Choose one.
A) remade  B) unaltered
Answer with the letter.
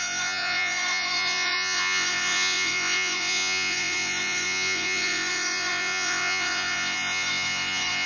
A